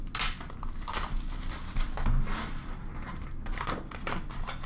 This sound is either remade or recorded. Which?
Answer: recorded